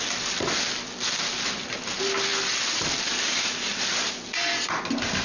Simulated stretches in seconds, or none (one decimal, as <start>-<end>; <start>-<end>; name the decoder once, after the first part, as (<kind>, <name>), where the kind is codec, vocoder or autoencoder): none